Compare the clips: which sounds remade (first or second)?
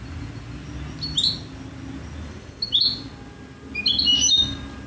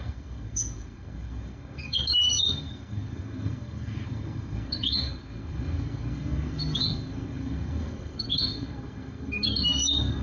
second